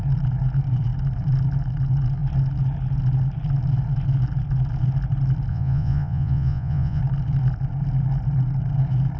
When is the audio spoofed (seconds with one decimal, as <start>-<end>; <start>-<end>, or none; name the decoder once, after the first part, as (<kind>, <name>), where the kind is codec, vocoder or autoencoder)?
5.5-7.0 (vocoder, Vocos)